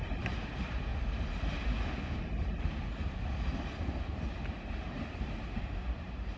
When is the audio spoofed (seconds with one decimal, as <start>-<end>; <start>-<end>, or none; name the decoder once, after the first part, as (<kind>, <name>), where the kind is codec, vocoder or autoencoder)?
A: 0.0-0.9 (vocoder, BigVGAN v2); 4.7-6.4